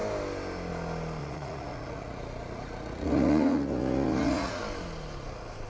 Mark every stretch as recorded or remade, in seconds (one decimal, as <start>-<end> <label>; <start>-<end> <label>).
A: 0.0-1.2 recorded; 1.2-4.6 remade; 4.6-5.7 recorded